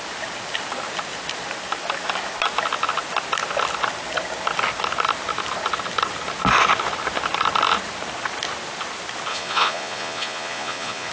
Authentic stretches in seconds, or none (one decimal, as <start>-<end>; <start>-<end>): 0.0-9.3